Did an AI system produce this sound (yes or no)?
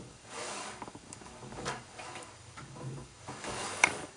yes